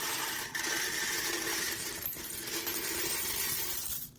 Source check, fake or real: real